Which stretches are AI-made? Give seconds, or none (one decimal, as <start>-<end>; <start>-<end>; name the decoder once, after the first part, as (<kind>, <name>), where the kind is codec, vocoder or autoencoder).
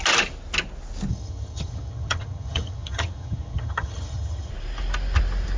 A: 1.1-4.5 (vocoder, HiFi-GAN)